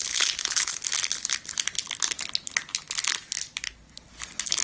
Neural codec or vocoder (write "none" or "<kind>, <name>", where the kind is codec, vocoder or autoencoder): none